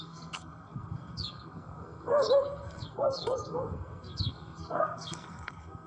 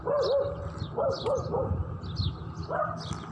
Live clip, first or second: second